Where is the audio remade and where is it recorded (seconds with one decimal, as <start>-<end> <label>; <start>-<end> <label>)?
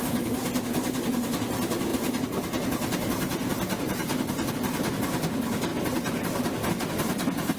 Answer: 0.0-7.6 recorded